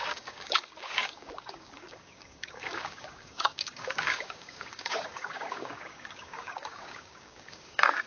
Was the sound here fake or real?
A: fake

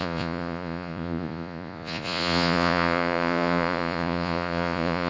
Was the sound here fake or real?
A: fake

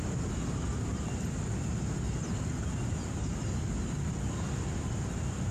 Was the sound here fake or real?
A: real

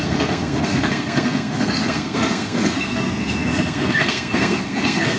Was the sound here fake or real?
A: fake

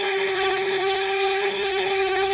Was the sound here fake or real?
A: fake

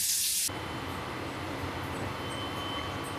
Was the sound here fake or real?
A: real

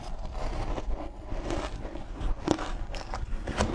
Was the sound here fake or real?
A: real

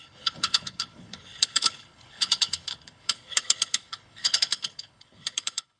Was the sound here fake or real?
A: fake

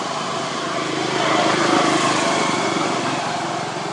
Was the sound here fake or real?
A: real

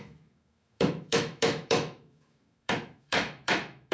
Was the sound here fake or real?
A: fake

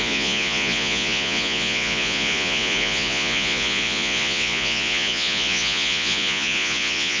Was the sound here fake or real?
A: fake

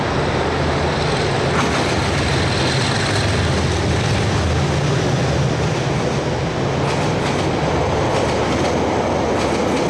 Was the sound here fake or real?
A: real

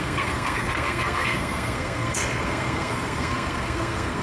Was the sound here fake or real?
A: fake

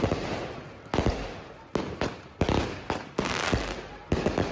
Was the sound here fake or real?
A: real